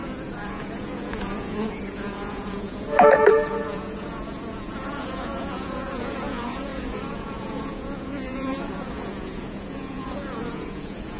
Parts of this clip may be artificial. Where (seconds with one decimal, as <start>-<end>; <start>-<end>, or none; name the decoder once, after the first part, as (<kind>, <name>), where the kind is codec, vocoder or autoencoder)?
0.0-11.2 (vocoder, Vocos)